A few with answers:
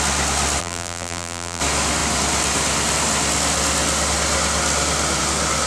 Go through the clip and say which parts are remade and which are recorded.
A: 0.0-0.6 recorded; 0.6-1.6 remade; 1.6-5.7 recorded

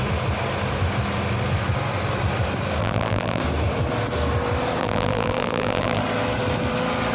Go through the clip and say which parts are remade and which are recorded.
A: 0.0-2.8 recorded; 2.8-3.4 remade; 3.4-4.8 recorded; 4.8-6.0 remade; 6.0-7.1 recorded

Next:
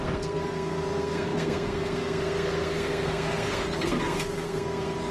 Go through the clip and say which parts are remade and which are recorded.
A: 0.0-5.1 remade

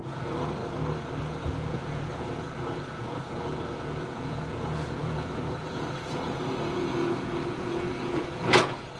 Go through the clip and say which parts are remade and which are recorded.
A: 0.0-0.6 remade; 0.6-1.2 recorded; 1.2-9.0 remade

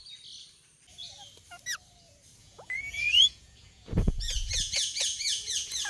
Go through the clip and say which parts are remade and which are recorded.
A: 0.0-2.4 recorded; 2.4-5.9 remade